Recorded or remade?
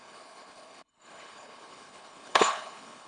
remade